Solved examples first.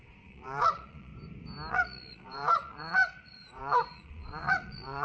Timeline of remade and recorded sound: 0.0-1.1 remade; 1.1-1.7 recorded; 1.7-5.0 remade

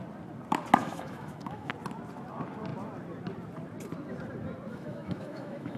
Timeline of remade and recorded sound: 0.0-0.8 recorded; 0.8-1.7 remade; 1.7-4.7 recorded; 4.7-5.8 remade

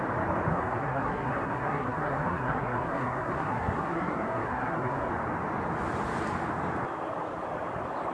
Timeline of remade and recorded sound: 0.0-0.5 recorded; 0.5-5.1 remade; 5.1-8.1 recorded

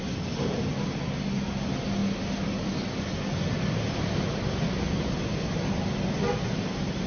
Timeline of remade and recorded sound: 0.0-7.1 recorded

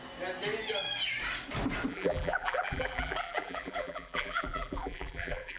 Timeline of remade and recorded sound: 0.0-1.9 recorded; 1.9-5.6 remade